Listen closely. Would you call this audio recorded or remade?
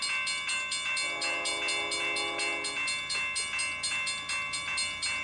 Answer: recorded